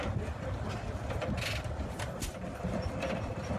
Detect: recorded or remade remade